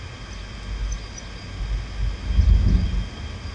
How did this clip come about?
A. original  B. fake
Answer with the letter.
A